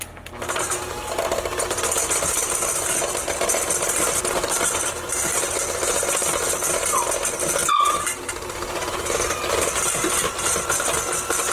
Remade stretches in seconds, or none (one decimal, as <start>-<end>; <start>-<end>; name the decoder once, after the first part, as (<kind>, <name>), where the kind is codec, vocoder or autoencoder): 7.6-10.6 (vocoder, BigVGAN v2)